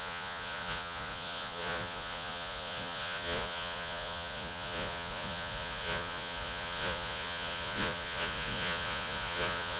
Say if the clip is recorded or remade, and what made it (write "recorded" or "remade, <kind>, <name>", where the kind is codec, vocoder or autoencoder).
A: remade, vocoder, Vocos